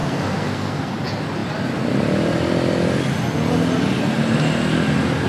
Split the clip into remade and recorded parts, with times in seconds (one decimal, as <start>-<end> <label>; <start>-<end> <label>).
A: 0.0-0.9 remade; 0.9-5.3 recorded